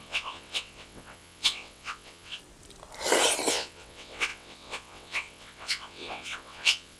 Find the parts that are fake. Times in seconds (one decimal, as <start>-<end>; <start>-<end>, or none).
0.0-2.4; 3.5-7.0